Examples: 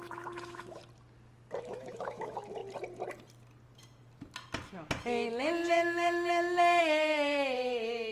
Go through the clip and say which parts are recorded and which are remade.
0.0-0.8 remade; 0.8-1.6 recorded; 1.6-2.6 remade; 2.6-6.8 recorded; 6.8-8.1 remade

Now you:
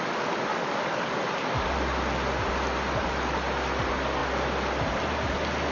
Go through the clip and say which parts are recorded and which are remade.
0.0-0.5 recorded; 0.5-1.2 remade; 1.2-5.7 recorded

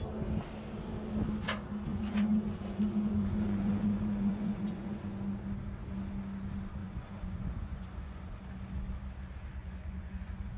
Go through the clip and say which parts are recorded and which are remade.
0.0-1.9 recorded; 1.9-5.2 remade; 5.2-6.8 recorded; 6.8-8.4 remade; 8.4-9.6 recorded; 9.6-10.6 remade

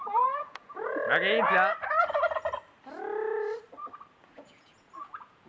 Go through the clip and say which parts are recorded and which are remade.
0.0-0.9 remade; 0.9-4.2 recorded; 4.2-5.5 remade

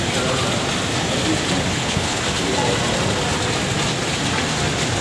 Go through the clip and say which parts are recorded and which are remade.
0.0-1.7 recorded; 1.7-2.2 remade; 2.2-5.0 recorded

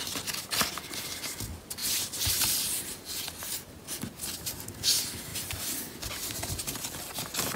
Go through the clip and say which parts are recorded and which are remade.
0.0-7.6 recorded